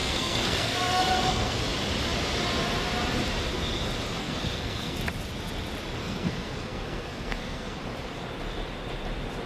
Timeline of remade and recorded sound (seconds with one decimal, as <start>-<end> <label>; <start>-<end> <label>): 0.0-1.6 remade; 1.6-4.2 recorded; 4.2-5.0 remade; 5.0-6.0 recorded; 6.0-7.8 remade; 7.8-9.5 recorded